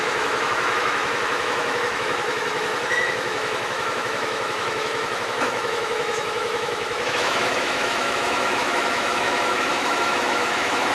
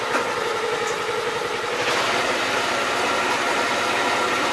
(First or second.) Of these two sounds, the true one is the second